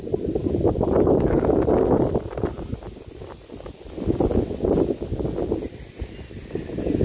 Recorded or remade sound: recorded